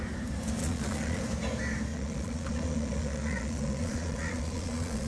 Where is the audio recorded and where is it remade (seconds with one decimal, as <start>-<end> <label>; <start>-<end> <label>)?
0.0-0.6 recorded; 0.6-1.2 remade; 1.2-1.9 recorded; 1.9-5.1 remade